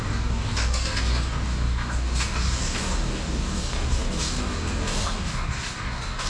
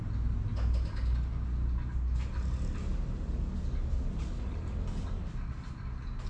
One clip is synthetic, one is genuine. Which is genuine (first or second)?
second